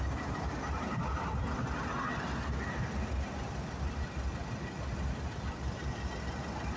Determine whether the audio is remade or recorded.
recorded